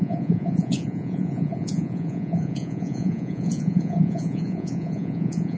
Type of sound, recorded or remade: remade